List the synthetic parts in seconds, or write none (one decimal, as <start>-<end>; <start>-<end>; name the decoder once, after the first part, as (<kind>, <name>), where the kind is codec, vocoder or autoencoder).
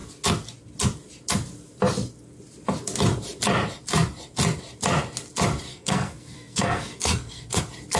5.7-7.6 (codec, SNAC)